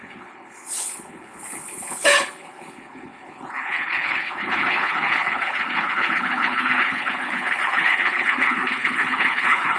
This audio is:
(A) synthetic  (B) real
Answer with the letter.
A